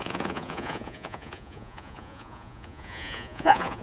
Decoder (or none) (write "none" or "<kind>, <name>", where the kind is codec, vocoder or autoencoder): vocoder, Vocos